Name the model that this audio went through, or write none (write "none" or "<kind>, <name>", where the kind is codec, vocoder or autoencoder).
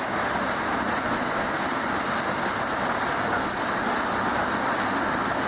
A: none